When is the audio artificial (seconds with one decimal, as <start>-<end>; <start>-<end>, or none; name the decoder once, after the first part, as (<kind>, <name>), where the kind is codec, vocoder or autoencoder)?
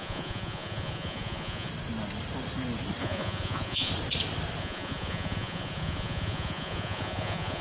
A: 0.0-1.7 (vocoder, Vocos); 3.0-3.9; 4.6-7.6